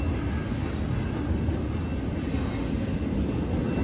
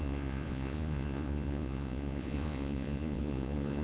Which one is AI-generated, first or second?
second